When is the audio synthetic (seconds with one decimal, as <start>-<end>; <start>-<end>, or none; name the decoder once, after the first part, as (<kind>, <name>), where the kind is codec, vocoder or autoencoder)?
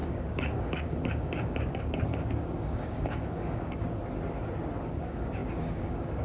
0.0-4.0 (codec, DAC); 4.8-6.2